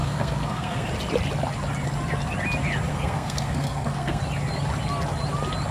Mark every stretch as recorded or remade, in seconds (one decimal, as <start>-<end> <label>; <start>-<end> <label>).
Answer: 0.0-0.9 remade; 0.9-2.9 recorded; 2.9-4.2 remade; 4.2-5.7 recorded